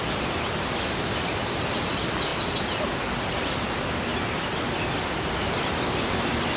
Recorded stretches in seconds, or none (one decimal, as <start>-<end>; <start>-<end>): 0.0-6.6